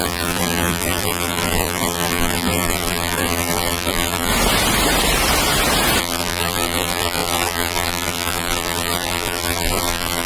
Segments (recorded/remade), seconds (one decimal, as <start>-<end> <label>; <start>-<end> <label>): 0.0-4.3 remade; 4.3-6.0 recorded; 6.0-10.3 remade